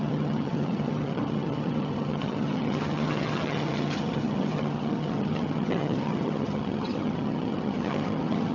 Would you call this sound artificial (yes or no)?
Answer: yes